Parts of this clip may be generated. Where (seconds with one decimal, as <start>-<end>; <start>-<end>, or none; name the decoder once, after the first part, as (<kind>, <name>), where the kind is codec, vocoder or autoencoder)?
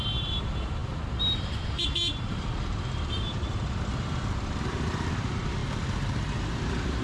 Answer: 0.0-5.6 (vocoder, BigVGAN v2); 6.6-7.0